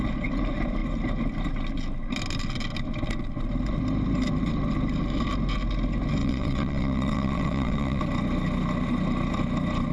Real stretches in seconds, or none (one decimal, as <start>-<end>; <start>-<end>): 0.0-6.2; 8.0-9.9